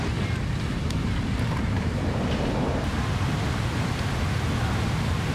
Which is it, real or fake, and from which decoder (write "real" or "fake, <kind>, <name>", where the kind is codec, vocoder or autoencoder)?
real